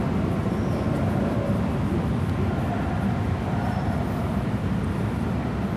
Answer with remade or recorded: recorded